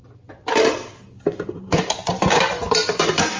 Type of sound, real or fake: real